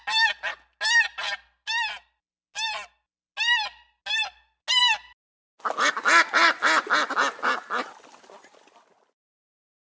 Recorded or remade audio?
recorded